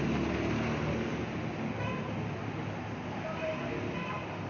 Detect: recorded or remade recorded